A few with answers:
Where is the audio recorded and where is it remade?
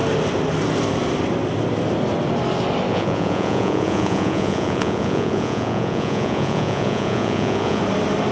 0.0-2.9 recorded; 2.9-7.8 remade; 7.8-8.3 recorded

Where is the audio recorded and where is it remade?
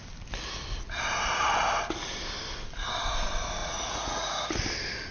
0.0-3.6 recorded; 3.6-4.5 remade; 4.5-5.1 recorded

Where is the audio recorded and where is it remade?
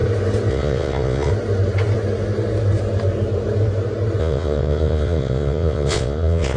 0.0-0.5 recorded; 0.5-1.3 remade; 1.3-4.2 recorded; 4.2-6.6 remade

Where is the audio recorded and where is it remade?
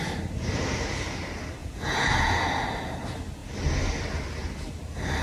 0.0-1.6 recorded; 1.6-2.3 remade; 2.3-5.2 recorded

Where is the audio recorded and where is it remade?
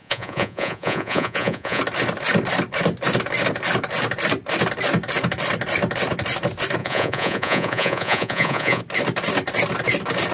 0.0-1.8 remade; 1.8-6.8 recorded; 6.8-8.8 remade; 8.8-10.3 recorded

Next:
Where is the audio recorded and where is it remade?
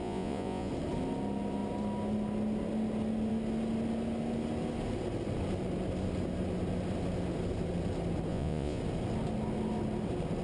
0.0-0.7 remade; 0.7-8.3 recorded; 8.3-8.8 remade; 8.8-10.4 recorded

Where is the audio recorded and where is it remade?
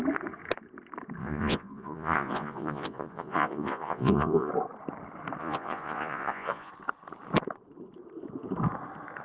0.0-1.2 recorded; 1.2-4.5 remade; 4.5-5.4 recorded; 5.4-6.7 remade; 6.7-9.2 recorded